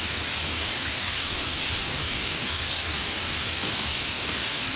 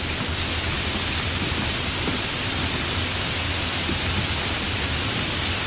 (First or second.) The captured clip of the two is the second